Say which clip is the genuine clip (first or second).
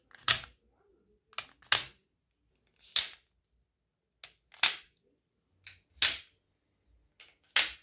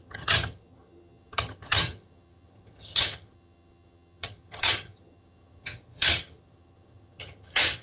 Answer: first